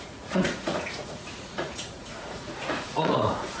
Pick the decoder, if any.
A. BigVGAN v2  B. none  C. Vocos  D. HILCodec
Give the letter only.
C